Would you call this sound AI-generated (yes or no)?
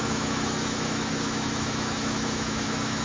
yes